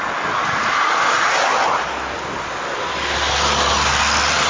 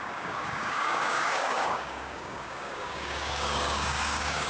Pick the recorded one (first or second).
first